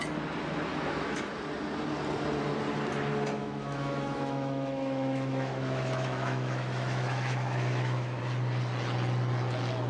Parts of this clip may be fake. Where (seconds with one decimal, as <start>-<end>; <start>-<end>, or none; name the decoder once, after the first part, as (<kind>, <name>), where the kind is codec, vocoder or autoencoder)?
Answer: 0.7-1.2 (autoencoder, DAC-VAE); 3.4-8.2